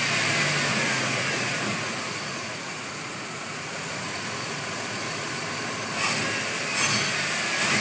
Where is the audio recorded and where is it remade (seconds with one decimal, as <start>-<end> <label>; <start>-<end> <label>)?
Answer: 0.0-0.7 recorded; 0.7-5.4 remade; 5.4-7.8 recorded